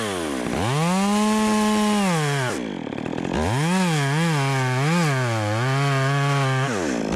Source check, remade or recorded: recorded